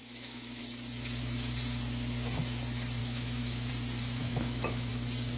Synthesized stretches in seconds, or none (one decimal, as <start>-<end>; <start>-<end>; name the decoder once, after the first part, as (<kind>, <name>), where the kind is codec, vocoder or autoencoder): 0.0-0.6 (autoencoder, DAC-VAE); 3.0-3.7; 4.2-4.9